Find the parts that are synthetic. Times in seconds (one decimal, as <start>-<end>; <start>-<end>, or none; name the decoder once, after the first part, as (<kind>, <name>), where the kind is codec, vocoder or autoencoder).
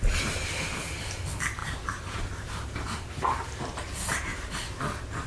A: 1.6-4.8 (vocoder, BigVGAN v2)